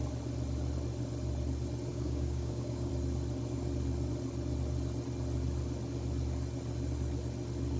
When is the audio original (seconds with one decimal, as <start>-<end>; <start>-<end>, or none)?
0.0-1.9; 2.9-7.8

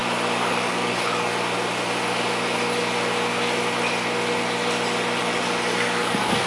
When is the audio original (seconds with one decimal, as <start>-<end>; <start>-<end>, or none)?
0.0-0.5; 1.3-5.2

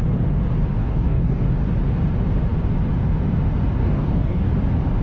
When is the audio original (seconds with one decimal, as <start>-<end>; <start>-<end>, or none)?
0.0-0.8; 1.5-3.8; 4.5-5.0